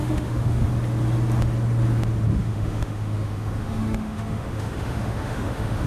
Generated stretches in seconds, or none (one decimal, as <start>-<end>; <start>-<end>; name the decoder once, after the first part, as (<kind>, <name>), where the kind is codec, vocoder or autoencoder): 0.0-0.7 (autoencoder, DAC-VAE); 2.3-5.9